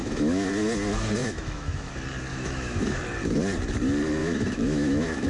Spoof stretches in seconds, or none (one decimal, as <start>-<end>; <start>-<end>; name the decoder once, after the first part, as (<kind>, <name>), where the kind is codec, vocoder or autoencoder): 0.0-0.5 (autoencoder, DAC-VAE); 1.2-1.9; 2.3-3.0; 4.2-5.3